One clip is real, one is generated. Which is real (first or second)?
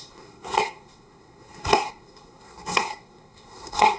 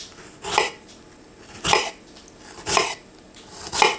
second